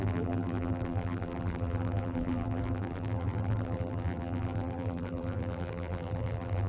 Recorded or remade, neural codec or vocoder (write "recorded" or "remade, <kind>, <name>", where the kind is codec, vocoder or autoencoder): remade, vocoder, BigVGAN v2